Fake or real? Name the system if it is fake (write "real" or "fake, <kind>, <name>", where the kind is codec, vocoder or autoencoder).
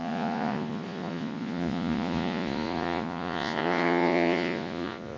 fake, vocoder, Vocos